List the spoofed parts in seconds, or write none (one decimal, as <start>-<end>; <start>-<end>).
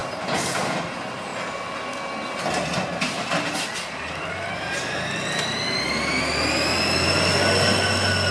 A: 0.0-1.3; 3.6-8.3